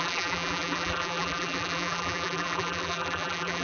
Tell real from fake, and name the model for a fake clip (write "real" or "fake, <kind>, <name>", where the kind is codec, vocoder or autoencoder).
fake, vocoder, BigVGAN v2